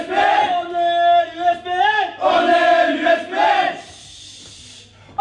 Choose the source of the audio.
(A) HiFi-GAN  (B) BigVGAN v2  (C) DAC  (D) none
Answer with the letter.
D